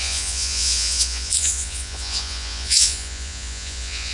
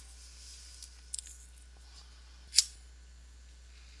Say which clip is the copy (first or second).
first